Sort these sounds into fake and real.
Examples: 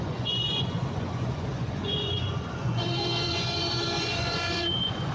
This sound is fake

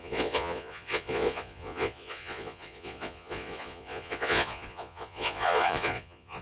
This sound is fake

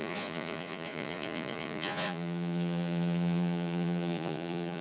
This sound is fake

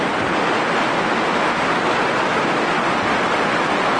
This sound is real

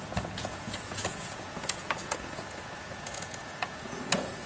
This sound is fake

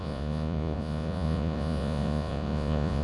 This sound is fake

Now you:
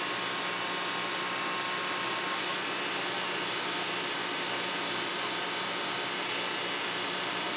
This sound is real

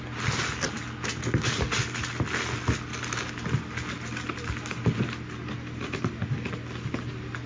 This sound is real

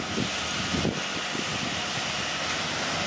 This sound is real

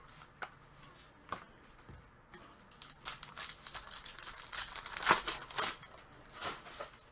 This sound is real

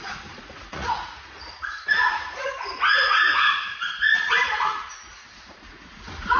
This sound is fake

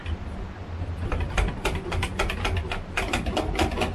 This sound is real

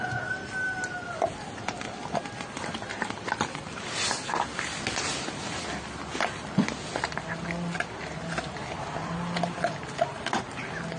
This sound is real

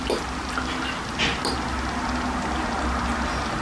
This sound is real